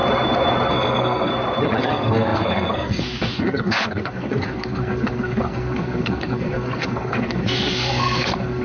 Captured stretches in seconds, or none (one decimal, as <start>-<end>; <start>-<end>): 0.0-0.7; 1.3-1.8